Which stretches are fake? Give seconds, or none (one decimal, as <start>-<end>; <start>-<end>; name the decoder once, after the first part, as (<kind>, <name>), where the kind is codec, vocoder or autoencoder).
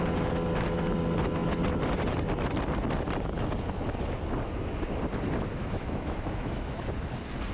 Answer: 5.6-6.8 (autoencoder, DAC-VAE)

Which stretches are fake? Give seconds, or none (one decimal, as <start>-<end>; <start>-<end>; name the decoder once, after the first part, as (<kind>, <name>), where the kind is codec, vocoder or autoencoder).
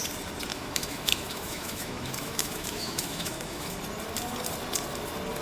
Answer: 0.5-3.7 (autoencoder, DAC-VAE)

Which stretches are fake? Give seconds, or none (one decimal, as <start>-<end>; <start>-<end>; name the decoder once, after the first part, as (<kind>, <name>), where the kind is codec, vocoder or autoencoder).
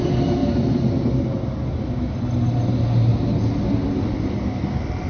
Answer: none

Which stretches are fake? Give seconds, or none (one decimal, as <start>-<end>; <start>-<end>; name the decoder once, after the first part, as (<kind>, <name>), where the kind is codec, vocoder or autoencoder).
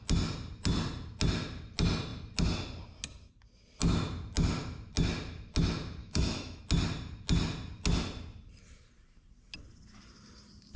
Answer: 6.0-6.6 (autoencoder, DAC-VAE)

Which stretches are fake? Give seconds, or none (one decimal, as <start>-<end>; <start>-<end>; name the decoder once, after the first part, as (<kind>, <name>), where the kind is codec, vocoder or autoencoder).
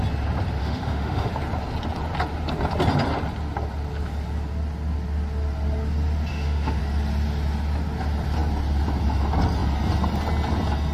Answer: 0.6-1.3 (autoencoder, DAC-VAE); 6.3-6.8